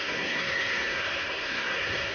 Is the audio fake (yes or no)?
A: yes